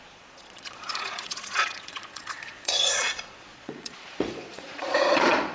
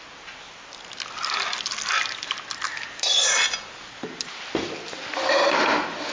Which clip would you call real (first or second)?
second